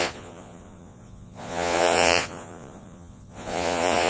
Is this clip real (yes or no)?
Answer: no